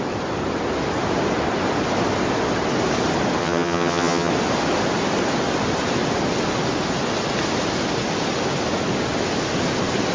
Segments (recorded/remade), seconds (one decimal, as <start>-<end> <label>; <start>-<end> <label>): 0.0-3.4 recorded; 3.4-4.3 remade; 4.3-10.1 recorded

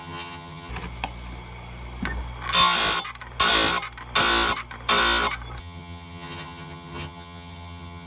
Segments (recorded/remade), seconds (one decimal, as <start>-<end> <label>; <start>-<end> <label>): 0.0-0.7 remade; 0.7-5.6 recorded; 5.6-8.1 remade

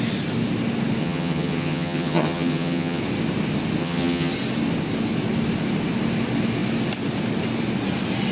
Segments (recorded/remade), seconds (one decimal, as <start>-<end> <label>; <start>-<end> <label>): 0.0-1.0 recorded; 1.0-3.0 remade; 3.0-3.8 recorded; 3.8-4.3 remade; 4.3-8.3 recorded

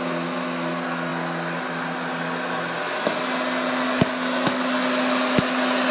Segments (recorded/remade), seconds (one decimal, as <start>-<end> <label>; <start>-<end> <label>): 0.0-5.9 recorded